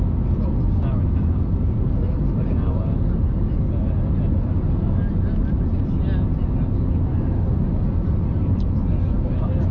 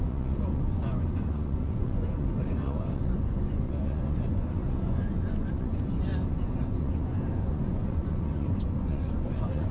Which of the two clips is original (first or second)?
first